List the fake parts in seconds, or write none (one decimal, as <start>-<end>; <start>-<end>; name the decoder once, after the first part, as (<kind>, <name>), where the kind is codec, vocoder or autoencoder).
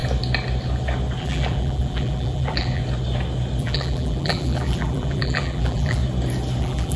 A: 1.2-2.8 (vocoder, BigVGAN v2); 3.6-6.0; 6.6-7.0